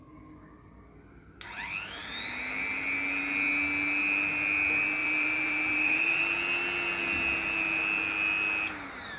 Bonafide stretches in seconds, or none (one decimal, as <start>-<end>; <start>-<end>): 0.0-5.0; 6.2-9.2